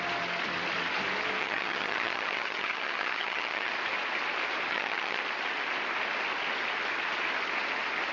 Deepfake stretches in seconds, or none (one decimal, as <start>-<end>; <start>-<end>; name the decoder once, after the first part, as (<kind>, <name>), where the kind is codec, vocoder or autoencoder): 1.4-3.7 (vocoder, HiFi-GAN); 4.7-5.2